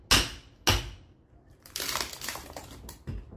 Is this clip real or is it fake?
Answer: real